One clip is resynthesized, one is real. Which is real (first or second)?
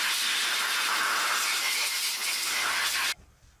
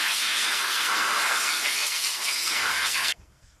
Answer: first